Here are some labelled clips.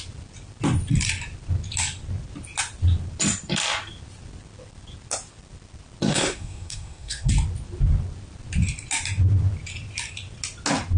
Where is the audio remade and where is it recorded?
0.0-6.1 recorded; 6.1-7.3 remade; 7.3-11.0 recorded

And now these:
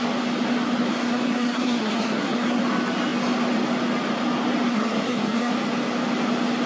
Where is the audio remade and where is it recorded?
0.0-0.9 recorded; 0.9-2.6 remade; 2.6-4.7 recorded; 4.7-5.5 remade; 5.5-6.7 recorded

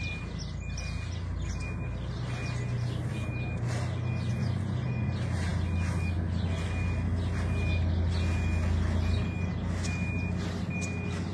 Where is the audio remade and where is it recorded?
0.0-4.3 recorded; 4.3-5.1 remade; 5.1-11.3 recorded

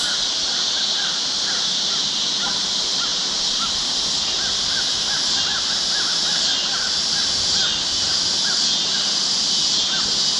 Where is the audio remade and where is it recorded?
0.0-3.1 recorded; 3.1-4.3 remade; 4.3-5.5 recorded; 5.5-6.1 remade; 6.1-10.4 recorded

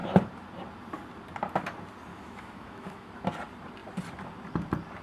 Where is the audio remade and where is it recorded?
0.0-2.1 recorded; 2.1-3.1 remade; 3.1-5.0 recorded